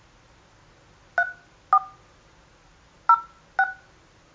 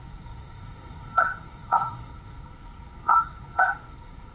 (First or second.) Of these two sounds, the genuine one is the first